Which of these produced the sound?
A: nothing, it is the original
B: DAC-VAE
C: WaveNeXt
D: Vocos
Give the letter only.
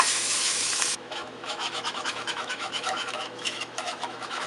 B